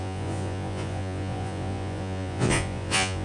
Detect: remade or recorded remade